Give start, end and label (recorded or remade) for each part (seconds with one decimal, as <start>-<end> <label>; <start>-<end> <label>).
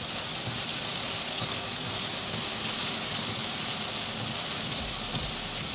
0.0-0.7 recorded; 0.7-1.8 remade; 1.8-2.5 recorded; 2.5-3.5 remade; 3.5-5.7 recorded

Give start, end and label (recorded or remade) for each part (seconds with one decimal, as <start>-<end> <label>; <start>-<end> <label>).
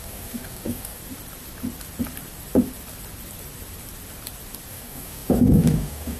0.0-1.0 remade; 1.0-4.7 recorded; 4.7-6.2 remade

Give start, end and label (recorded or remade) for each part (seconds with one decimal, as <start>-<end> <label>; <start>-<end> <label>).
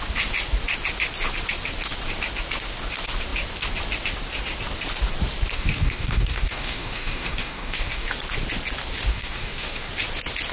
0.0-5.5 recorded; 5.5-8.1 remade; 8.1-9.1 recorded; 9.1-9.9 remade; 9.9-10.5 recorded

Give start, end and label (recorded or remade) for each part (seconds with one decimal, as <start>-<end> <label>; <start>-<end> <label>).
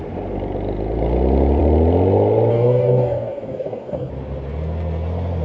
0.0-2.5 recorded; 2.5-4.1 remade; 4.1-5.4 recorded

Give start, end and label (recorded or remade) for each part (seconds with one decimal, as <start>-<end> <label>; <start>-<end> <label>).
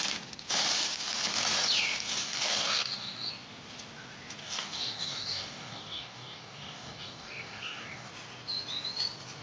0.0-2.1 recorded; 2.1-3.3 remade; 3.3-4.4 recorded; 4.4-8.1 remade; 8.1-9.4 recorded